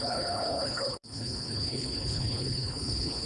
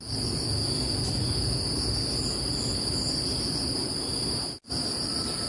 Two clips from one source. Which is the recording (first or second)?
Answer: second